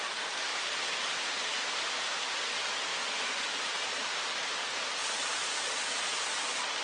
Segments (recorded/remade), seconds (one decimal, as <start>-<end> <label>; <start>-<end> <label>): 0.0-2.9 recorded; 2.9-3.5 remade; 3.5-6.8 recorded